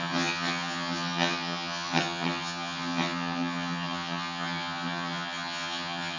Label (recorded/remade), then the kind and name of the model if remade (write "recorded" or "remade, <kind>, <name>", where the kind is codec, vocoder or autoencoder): remade, vocoder, HiFi-GAN